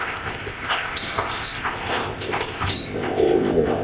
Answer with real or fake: fake